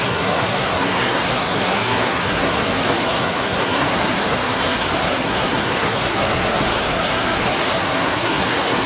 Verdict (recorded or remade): remade